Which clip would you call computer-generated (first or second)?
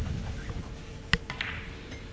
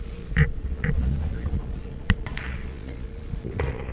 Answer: second